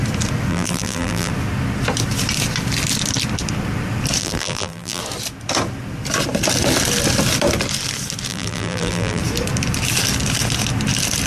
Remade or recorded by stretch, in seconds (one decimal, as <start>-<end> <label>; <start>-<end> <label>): 0.0-0.5 recorded; 0.5-1.3 remade; 1.3-4.2 recorded; 4.2-5.0 remade; 5.0-8.3 recorded; 8.3-9.2 remade; 9.2-11.3 recorded